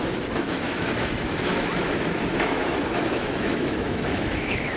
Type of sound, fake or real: fake